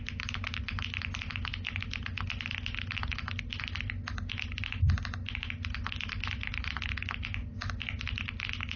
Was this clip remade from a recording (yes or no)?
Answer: no